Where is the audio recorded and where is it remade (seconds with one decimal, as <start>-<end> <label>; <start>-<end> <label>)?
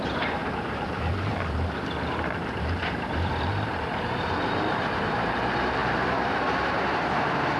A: 0.0-7.6 remade